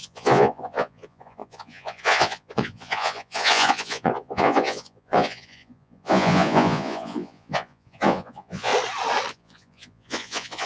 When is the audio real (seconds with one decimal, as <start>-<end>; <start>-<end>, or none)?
8.7-9.3